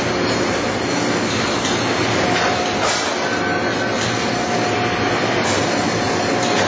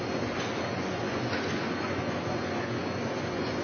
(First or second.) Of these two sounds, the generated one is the second